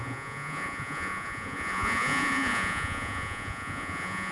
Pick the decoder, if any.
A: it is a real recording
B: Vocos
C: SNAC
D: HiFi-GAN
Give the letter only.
B